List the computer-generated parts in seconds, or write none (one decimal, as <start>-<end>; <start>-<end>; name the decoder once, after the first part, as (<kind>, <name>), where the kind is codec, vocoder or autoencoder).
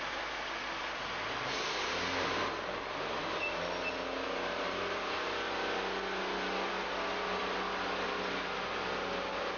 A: none